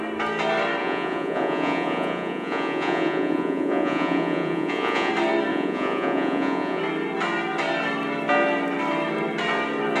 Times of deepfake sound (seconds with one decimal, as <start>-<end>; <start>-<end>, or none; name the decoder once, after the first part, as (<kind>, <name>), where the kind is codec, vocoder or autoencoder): 0.8-5.1 (vocoder, Vocos); 5.5-6.8